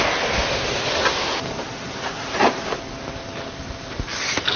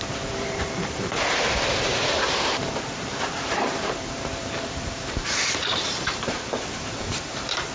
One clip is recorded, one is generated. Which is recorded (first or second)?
first